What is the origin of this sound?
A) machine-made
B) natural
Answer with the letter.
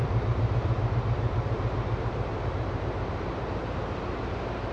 A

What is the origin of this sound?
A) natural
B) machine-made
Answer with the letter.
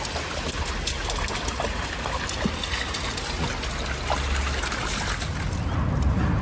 A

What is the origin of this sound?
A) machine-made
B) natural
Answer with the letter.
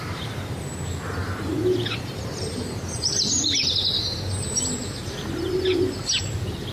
B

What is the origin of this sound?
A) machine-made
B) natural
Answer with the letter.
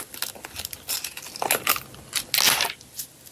B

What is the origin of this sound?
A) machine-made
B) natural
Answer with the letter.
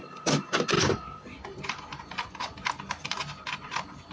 B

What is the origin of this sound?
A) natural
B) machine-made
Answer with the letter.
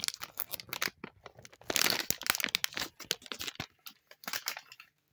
A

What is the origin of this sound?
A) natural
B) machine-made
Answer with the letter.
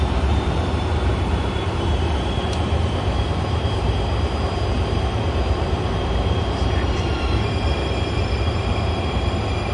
B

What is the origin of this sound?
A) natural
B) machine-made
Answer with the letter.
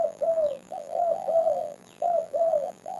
B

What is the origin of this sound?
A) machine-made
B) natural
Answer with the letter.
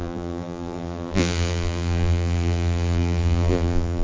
A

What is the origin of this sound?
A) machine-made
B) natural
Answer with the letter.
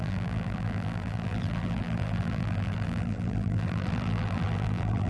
A